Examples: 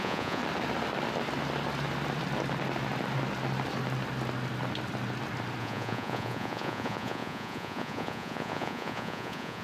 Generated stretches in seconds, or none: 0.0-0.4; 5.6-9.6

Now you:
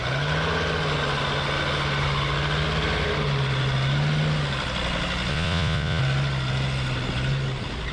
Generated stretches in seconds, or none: 5.3-6.0

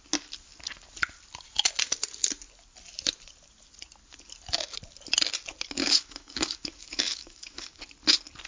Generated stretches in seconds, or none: 5.8-7.8

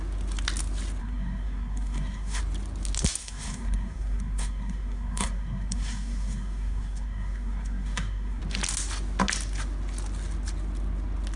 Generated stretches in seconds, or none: 1.0-2.4; 3.2-8.4

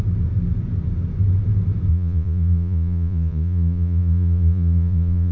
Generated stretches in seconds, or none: 1.9-5.3

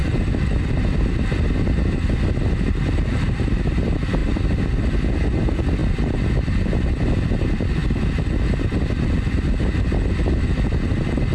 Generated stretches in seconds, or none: 0.0-1.1

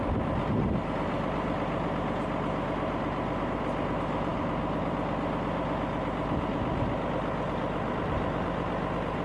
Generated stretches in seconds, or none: none